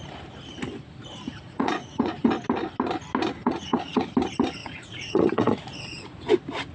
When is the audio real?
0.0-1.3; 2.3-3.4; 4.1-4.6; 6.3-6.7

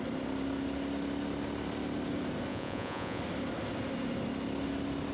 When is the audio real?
0.0-2.5; 3.2-5.1

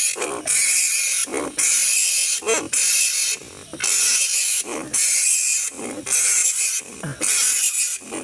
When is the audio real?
0.0-8.2

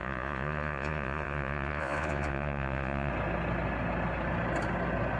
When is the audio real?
3.1-5.2

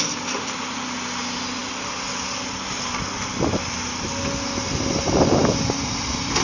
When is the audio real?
0.0-6.4